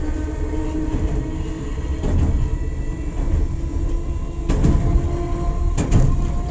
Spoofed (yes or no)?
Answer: no